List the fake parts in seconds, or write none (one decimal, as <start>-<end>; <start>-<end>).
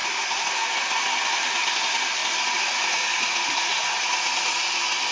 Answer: none